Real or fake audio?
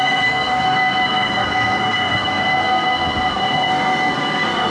fake